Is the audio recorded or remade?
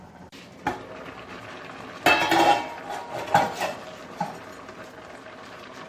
recorded